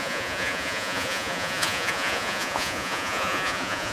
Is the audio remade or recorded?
remade